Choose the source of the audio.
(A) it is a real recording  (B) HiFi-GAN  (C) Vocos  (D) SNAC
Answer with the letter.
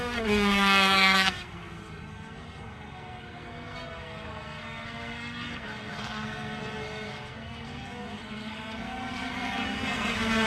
D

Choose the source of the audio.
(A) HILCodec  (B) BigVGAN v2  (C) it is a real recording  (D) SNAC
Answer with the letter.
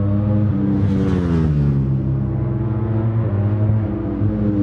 C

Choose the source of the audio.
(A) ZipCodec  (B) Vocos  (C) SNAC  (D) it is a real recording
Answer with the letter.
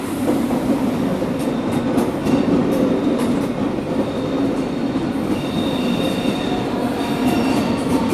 D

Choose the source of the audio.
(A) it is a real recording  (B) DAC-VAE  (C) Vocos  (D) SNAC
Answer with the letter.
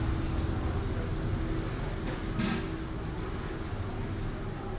A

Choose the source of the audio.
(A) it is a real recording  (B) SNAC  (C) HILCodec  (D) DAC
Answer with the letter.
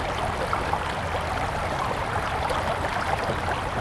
A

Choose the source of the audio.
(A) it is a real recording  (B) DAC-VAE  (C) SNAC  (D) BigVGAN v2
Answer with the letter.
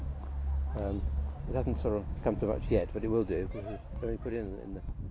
A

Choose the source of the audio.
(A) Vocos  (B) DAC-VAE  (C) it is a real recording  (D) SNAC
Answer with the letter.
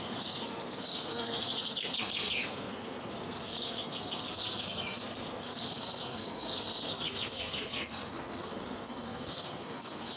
D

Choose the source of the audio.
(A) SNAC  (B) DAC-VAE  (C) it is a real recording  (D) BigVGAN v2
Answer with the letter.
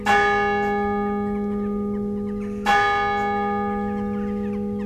C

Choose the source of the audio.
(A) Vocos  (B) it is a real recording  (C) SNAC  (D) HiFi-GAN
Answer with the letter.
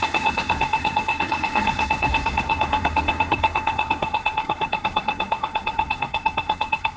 C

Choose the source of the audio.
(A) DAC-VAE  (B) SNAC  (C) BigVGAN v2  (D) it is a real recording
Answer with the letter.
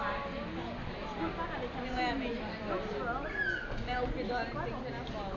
D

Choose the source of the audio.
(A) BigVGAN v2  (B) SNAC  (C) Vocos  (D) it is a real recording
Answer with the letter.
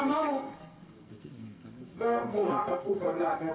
B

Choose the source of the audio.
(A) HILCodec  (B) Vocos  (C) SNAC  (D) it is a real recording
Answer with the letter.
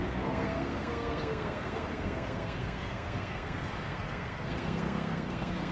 C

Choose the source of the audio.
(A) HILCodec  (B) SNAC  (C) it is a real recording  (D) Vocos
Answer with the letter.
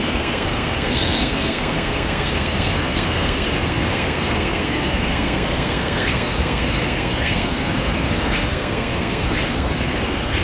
B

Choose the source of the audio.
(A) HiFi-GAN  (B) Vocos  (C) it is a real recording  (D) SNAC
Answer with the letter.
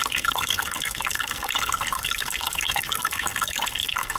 D